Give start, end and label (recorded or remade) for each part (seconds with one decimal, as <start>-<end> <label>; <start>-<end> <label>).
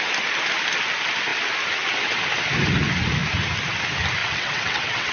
0.0-4.2 recorded; 4.2-5.1 remade